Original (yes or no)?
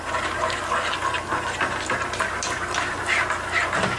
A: yes